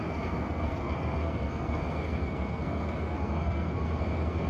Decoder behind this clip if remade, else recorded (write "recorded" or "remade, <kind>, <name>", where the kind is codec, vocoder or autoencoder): remade, codec, SNAC